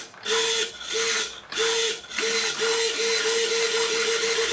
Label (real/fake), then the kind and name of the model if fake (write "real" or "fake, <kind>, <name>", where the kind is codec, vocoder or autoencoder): real